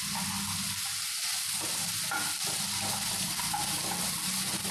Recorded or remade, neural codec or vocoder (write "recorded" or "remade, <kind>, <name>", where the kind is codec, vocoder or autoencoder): recorded